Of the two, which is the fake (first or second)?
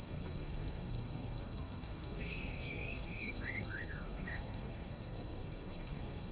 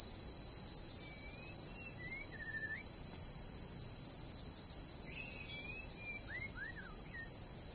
first